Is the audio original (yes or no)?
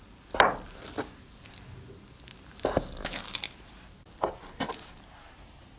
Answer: yes